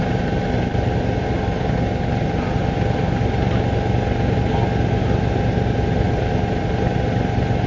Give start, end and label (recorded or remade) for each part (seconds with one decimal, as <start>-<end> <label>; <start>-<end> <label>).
0.0-7.7 recorded